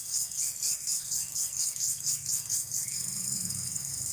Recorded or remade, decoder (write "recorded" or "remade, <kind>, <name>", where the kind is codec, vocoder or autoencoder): remade, codec, SNAC